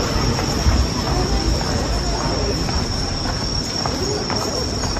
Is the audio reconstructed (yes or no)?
no